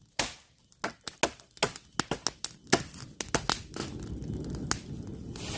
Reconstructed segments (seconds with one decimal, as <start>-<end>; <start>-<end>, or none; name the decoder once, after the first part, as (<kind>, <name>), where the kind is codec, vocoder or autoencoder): none